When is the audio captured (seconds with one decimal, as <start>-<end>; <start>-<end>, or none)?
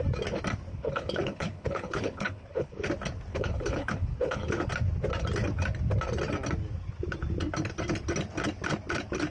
0.0-0.7; 2.9-3.3; 4.7-9.3